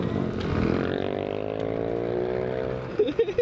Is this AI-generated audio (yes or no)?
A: no